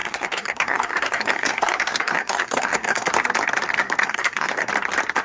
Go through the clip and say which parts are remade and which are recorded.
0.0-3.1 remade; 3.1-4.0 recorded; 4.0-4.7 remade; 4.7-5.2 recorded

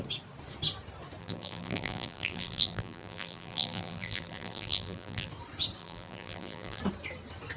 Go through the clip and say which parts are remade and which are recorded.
0.0-1.2 recorded; 1.2-5.3 remade; 5.3-5.8 recorded; 5.8-6.8 remade; 6.8-7.6 recorded

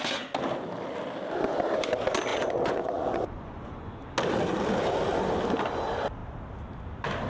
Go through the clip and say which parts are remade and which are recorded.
0.0-2.3 recorded; 2.3-4.0 remade; 4.0-7.3 recorded

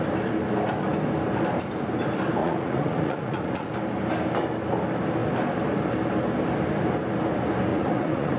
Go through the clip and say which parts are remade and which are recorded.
0.0-2.4 recorded; 2.4-3.7 remade; 3.7-7.7 recorded; 7.7-8.4 remade

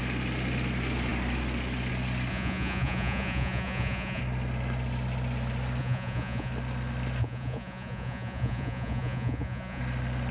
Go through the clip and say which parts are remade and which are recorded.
0.0-2.3 recorded; 2.3-4.2 remade; 4.2-5.8 recorded; 5.8-6.5 remade; 6.5-7.2 recorded; 7.2-9.8 remade; 9.8-10.3 recorded

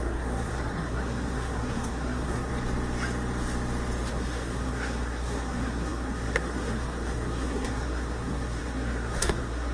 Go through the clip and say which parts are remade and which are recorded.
0.0-2.5 remade; 2.5-4.1 recorded; 4.1-9.7 remade

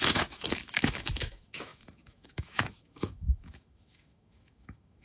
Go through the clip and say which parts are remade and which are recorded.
0.0-5.0 remade